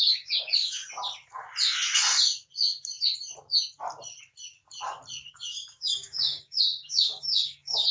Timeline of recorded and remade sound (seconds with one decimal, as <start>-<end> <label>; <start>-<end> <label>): 0.0-0.8 remade; 0.8-5.3 recorded; 5.3-7.9 remade